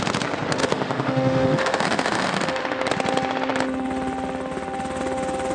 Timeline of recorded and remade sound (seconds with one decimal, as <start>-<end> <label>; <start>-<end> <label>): 0.0-0.6 recorded; 0.6-2.6 remade; 2.6-5.5 recorded